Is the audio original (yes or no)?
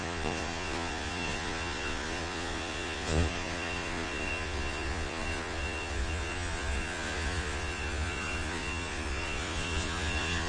no